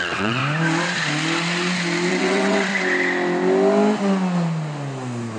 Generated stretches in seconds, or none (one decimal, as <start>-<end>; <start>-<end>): 0.0-0.4; 2.1-2.7